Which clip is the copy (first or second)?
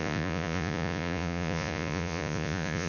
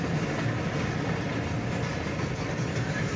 first